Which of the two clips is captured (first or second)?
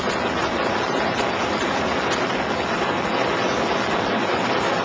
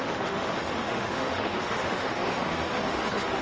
first